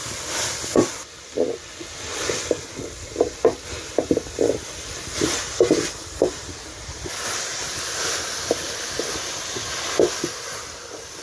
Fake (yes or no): no